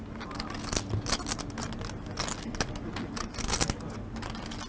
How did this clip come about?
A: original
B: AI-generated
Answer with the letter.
A